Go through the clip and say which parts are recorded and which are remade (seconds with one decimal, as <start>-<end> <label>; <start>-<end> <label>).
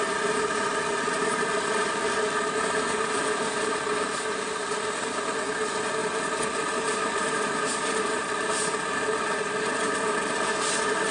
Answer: 0.0-11.1 recorded